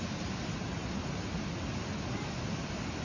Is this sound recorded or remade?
recorded